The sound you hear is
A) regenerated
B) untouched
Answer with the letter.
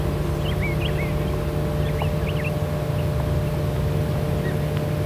B